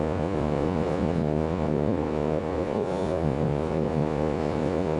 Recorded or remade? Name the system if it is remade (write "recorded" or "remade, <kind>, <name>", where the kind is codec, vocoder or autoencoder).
remade, vocoder, Vocos